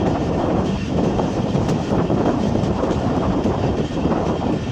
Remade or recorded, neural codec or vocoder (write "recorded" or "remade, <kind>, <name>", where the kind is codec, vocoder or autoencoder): remade, vocoder, BigVGAN v2